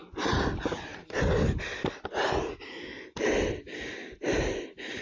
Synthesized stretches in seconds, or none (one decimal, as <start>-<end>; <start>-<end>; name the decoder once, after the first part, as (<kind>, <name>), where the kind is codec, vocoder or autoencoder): none